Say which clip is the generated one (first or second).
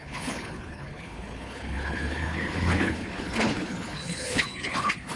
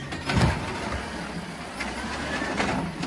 first